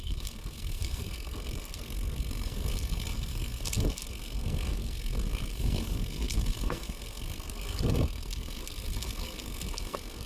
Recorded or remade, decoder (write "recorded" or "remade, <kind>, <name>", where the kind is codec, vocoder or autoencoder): remade, codec, SNAC